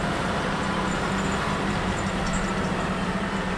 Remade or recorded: remade